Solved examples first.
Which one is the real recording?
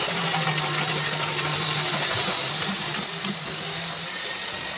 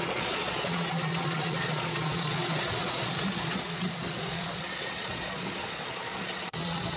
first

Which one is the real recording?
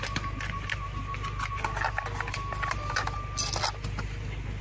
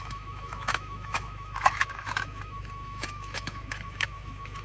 first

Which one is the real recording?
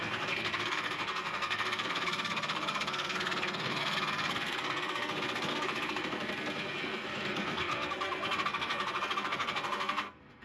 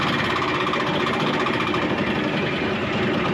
second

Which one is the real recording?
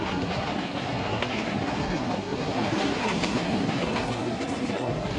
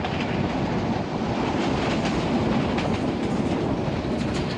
second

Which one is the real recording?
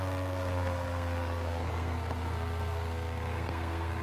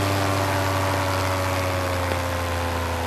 second